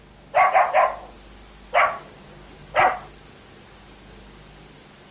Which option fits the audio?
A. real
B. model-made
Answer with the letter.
A